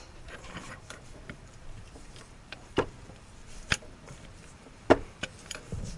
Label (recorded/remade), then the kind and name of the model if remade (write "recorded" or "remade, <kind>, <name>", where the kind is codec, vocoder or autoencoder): remade, vocoder, BigVGAN v2